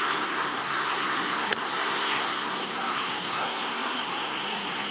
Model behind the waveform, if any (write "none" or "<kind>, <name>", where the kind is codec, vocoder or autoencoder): codec, SNAC